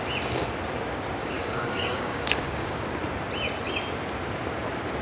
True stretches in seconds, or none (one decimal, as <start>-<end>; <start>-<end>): 0.0-1.2; 2.8-5.0